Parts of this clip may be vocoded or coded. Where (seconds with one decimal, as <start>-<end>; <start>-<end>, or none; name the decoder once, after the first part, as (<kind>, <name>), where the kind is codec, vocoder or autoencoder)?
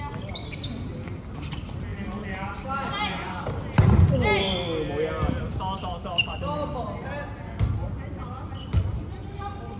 none